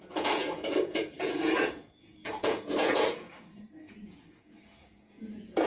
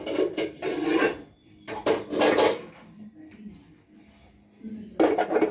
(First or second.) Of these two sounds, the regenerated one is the first